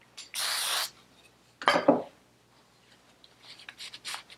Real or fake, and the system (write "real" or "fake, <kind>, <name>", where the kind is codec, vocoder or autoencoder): real